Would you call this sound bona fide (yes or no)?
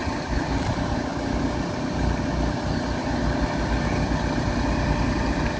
yes